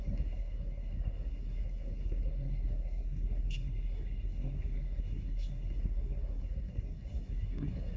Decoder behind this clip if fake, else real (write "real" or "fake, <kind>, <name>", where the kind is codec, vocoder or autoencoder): fake, codec, SNAC